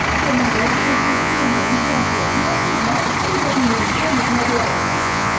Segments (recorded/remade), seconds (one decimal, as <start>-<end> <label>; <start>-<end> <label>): 0.0-0.8 recorded; 0.8-2.8 remade; 2.8-4.7 recorded; 4.7-5.4 remade